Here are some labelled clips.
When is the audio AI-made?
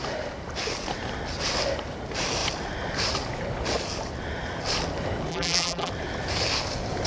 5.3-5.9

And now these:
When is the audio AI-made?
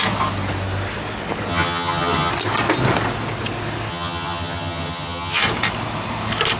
1.5-2.3; 3.9-5.4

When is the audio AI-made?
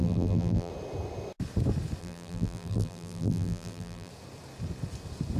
0.0-0.7; 2.0-4.1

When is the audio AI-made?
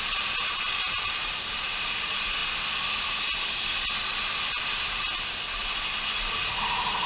0.0-2.4; 6.6-7.1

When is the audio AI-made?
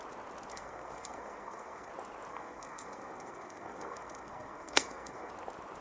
0.5-1.9; 2.3-5.3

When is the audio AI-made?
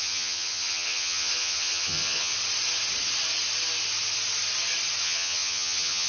0.0-2.3; 5.0-6.1